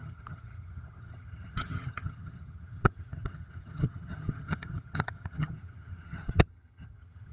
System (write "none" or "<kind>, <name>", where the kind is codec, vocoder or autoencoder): vocoder, HiFi-GAN